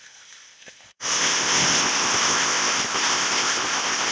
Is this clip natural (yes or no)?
no